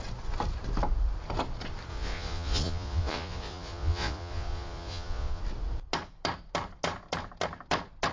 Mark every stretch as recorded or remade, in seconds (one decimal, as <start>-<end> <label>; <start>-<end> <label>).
0.0-1.9 recorded; 1.9-5.4 remade; 5.4-8.1 recorded